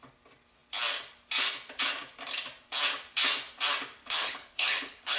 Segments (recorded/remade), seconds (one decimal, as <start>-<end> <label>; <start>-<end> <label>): 0.0-4.0 recorded; 4.0-5.2 remade